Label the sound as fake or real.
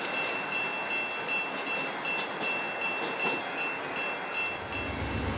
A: real